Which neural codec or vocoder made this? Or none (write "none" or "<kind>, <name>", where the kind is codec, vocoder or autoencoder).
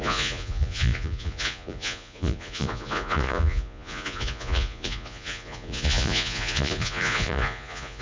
vocoder, Vocos